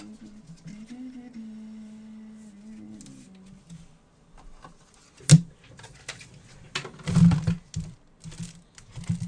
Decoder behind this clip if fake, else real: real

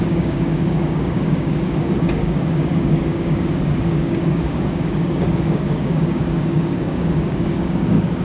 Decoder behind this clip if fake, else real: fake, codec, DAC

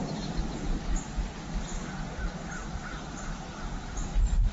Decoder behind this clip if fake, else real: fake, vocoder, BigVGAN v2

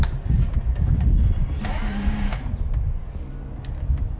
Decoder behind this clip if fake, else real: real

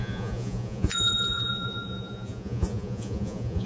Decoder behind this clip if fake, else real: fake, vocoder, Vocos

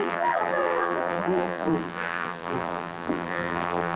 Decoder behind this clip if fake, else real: fake, vocoder, BigVGAN v2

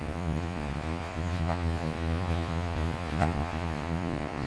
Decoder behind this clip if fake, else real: fake, vocoder, Vocos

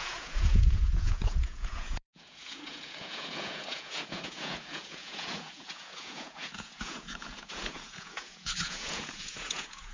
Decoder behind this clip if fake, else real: fake, vocoder, Vocos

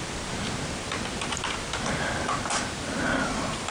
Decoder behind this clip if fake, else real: fake, vocoder, BigVGAN v2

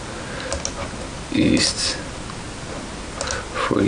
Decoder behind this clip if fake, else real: real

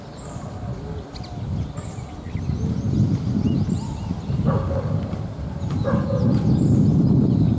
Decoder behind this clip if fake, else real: real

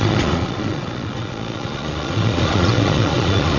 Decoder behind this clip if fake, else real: fake, vocoder, Vocos